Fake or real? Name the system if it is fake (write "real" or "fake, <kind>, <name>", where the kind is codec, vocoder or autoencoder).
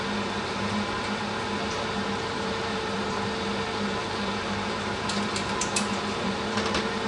fake, vocoder, BigVGAN v2